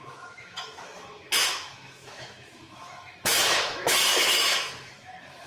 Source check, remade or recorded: remade